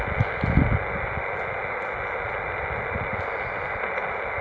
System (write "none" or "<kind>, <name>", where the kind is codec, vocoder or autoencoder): none